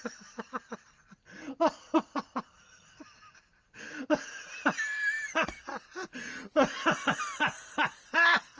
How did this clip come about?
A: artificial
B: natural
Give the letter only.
B